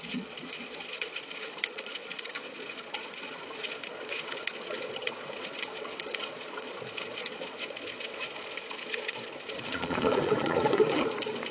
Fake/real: fake